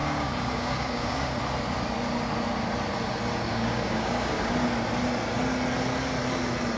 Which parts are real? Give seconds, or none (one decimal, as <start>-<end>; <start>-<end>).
1.4-3.5; 4.5-6.8